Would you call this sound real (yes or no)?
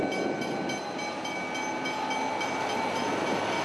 yes